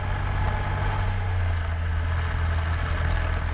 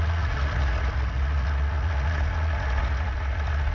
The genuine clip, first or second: first